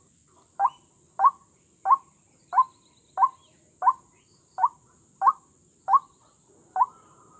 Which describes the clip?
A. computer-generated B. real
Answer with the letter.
B